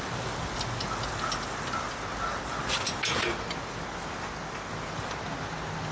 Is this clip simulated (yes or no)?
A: no